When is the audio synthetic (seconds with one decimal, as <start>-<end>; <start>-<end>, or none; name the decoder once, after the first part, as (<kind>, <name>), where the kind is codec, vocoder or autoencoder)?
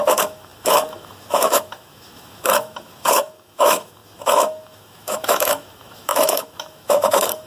0.0-7.5 (autoencoder, DAC-VAE)